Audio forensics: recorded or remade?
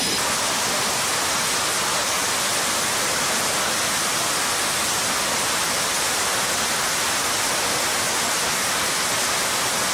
recorded